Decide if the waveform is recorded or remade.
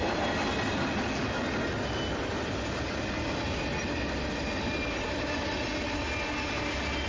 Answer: recorded